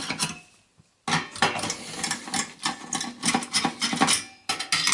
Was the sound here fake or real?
real